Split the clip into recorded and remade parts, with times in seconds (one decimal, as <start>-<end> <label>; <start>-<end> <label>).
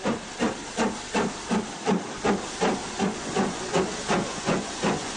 0.0-2.8 recorded; 2.8-3.8 remade; 3.8-4.3 recorded; 4.3-5.2 remade